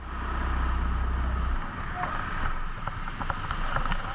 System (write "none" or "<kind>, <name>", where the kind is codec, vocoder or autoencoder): none